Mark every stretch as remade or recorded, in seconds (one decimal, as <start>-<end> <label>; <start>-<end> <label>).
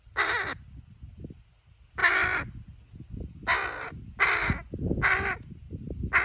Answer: 0.0-6.2 recorded